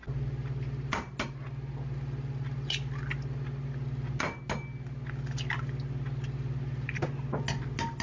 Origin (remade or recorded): recorded